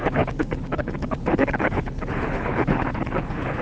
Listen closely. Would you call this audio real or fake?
fake